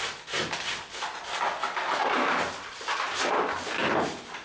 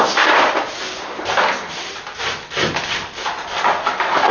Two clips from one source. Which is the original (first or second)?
first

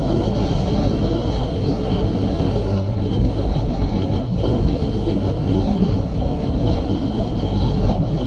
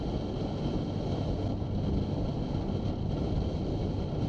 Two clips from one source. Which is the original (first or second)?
second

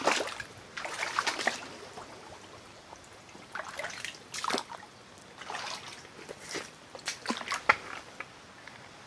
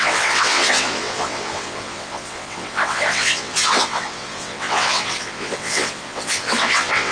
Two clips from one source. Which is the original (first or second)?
first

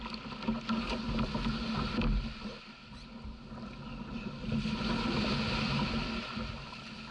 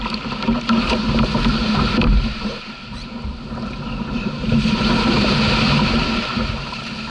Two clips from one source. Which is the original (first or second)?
first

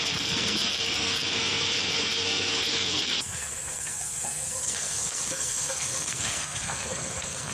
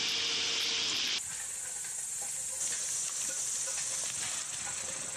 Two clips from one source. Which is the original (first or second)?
second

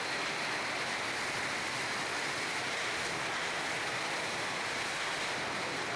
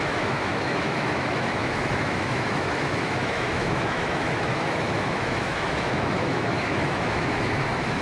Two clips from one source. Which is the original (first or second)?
first